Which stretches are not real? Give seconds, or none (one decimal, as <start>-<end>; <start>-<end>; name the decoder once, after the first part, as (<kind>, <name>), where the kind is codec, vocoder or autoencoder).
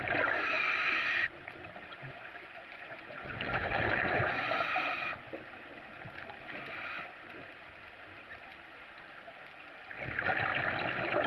1.9-4.6 (vocoder, Vocos)